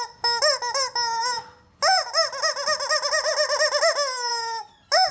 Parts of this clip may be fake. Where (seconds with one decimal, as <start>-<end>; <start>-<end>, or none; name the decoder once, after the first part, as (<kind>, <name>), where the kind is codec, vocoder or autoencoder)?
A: none